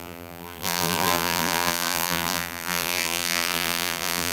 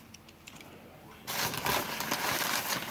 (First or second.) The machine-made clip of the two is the first